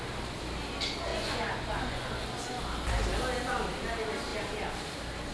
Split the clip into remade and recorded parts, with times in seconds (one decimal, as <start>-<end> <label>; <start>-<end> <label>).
0.0-1.1 recorded; 1.1-2.3 remade; 2.3-5.3 recorded